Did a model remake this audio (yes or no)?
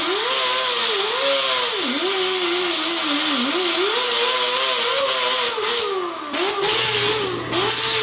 no